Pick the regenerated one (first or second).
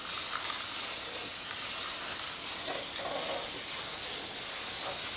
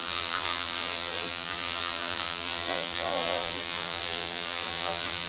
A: second